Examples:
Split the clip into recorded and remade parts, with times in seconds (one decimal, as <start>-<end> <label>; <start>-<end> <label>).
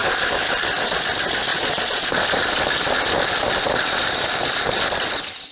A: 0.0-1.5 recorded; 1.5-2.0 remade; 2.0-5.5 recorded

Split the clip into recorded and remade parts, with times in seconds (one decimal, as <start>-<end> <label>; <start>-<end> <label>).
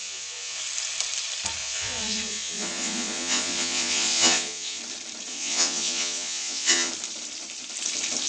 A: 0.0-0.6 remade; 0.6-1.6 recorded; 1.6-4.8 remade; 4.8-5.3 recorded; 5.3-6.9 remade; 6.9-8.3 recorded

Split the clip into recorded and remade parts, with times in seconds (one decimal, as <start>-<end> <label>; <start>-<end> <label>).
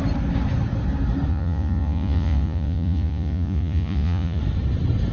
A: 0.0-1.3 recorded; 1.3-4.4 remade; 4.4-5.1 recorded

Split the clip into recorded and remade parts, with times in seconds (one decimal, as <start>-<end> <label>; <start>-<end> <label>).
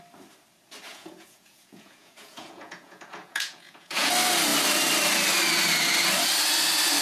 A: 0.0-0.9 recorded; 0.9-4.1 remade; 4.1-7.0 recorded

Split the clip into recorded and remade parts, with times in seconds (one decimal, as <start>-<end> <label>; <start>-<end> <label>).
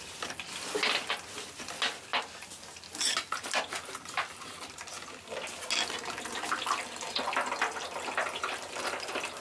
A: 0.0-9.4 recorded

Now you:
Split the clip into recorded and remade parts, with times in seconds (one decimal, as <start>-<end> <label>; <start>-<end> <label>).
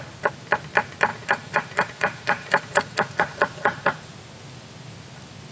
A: 0.0-1.1 recorded; 1.1-4.1 remade; 4.1-5.5 recorded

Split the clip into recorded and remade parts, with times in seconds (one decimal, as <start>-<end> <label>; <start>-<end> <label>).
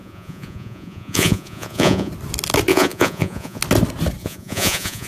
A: 0.0-2.1 remade; 2.1-2.7 recorded; 2.7-3.6 remade; 3.6-4.2 recorded; 4.2-5.1 remade